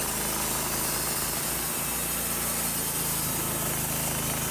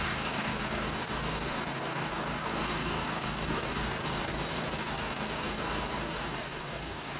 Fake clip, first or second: second